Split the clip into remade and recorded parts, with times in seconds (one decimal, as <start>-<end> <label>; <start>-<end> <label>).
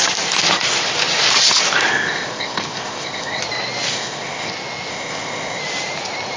0.0-1.9 recorded; 1.9-3.4 remade; 3.4-3.9 recorded; 3.9-4.5 remade; 4.5-4.9 recorded; 4.9-5.6 remade; 5.6-6.4 recorded